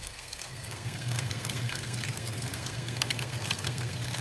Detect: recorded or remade remade